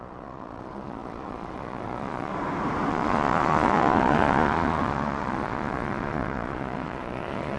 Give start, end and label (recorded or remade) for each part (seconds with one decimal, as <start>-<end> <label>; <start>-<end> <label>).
0.0-2.3 remade; 2.3-2.9 recorded; 2.9-7.6 remade